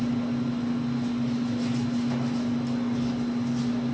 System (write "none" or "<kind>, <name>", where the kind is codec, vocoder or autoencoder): none